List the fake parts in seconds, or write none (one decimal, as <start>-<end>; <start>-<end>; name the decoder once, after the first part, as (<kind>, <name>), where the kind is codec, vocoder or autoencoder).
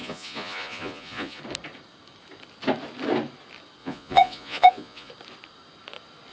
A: 0.0-1.4 (vocoder, Vocos); 3.8-5.1